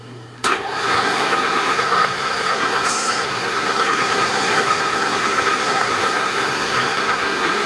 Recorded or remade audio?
remade